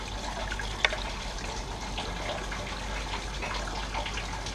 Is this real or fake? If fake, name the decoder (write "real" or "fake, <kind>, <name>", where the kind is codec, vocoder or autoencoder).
real